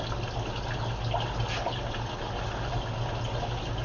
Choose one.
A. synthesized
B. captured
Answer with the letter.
B